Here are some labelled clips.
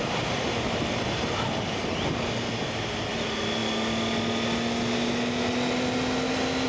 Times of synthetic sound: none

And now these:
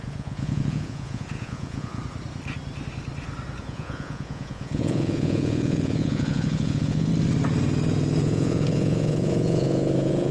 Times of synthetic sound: 0.0-2.0; 3.6-7.1; 8.2-10.3

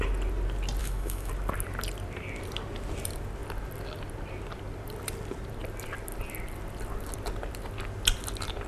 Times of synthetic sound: 0.8-1.3

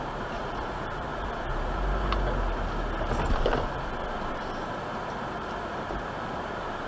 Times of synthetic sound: 0.0-1.1; 4.3-6.9

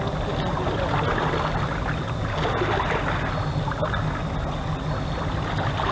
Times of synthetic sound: none

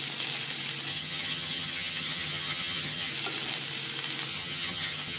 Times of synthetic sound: 0.9-3.1; 4.3-5.2

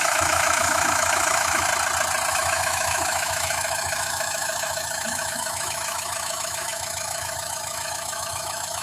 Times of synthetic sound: 0.0-1.7; 2.3-8.8

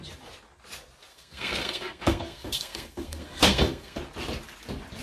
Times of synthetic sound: 1.1-4.0